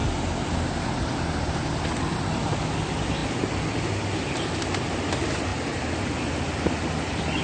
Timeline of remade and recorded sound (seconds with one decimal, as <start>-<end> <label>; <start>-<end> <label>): 0.0-7.4 recorded